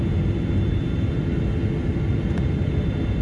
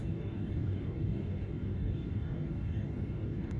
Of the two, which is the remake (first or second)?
second